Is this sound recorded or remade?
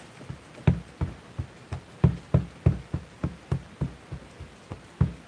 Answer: recorded